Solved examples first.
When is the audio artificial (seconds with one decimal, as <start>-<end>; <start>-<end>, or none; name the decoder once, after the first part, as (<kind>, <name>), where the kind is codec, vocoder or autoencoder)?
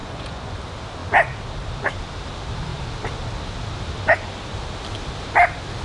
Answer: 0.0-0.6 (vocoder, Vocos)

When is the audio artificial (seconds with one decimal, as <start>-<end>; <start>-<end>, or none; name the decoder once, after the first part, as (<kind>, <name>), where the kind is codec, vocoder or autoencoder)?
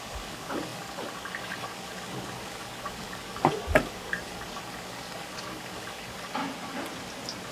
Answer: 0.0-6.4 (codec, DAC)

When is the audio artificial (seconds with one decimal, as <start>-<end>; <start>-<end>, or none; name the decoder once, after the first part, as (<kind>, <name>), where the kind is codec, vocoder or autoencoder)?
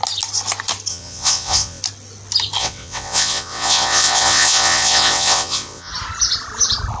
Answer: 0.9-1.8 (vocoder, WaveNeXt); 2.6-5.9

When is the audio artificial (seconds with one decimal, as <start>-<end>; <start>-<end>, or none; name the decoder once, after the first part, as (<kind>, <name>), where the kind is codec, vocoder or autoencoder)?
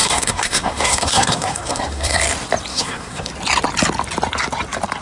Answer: 0.0-2.2 (codec, SNAC); 2.7-3.3